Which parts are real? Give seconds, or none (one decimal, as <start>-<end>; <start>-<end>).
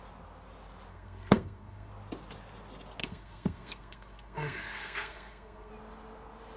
0.0-0.9; 1.9-3.0; 5.7-6.6